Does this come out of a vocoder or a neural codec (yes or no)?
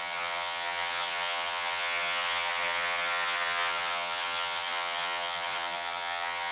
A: yes